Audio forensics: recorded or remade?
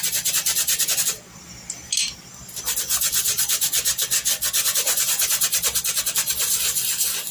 recorded